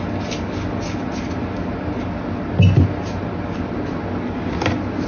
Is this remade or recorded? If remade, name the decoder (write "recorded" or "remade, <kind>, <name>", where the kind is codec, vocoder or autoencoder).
recorded